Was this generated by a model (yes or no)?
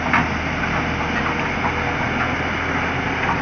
no